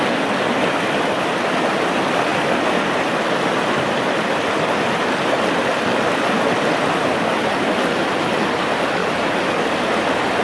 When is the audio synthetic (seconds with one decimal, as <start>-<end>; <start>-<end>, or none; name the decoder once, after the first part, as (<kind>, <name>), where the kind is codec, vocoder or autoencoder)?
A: none